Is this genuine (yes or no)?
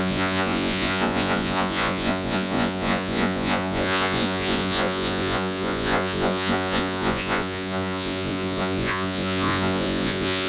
no